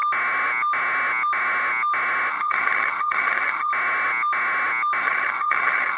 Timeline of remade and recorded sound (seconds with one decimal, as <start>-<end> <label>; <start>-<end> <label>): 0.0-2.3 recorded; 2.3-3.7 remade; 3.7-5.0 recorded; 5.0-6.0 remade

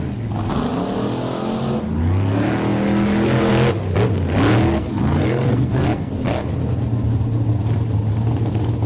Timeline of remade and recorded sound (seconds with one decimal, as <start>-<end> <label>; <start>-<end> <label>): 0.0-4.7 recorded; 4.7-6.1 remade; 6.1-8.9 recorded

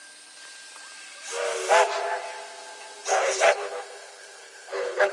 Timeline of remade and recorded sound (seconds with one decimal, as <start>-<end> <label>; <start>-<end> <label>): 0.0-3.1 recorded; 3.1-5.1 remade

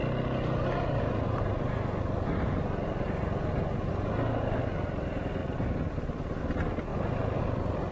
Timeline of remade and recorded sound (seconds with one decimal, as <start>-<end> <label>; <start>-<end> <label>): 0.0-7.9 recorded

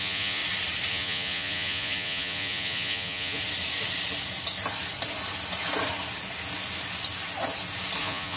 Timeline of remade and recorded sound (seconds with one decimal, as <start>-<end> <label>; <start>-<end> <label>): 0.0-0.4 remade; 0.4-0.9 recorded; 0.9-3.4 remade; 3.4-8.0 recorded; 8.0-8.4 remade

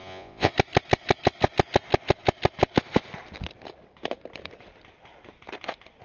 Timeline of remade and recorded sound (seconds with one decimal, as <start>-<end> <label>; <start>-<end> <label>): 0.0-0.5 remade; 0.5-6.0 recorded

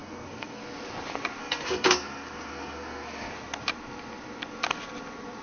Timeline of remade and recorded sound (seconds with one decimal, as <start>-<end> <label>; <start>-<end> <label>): 0.0-0.6 remade; 0.6-1.4 recorded; 1.4-3.3 remade; 3.3-5.4 recorded